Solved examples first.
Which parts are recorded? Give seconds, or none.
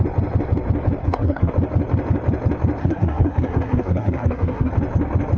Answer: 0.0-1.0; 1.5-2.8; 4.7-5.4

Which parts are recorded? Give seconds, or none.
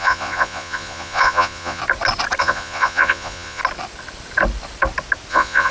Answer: 1.8-2.4; 3.6-5.3